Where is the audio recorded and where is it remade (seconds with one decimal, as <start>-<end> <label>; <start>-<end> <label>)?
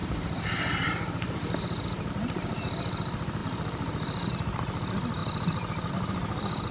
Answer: 0.0-6.7 remade